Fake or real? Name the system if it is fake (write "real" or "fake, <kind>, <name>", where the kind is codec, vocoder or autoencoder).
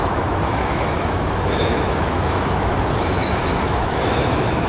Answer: fake, autoencoder, DAC-VAE